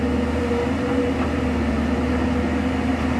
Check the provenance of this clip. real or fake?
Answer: real